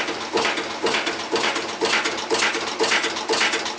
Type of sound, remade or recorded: recorded